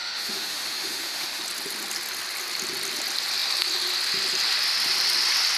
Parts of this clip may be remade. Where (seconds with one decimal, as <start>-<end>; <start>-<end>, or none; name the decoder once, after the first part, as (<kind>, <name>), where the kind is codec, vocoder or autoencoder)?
0.0-1.4 (autoencoder, DAC-VAE)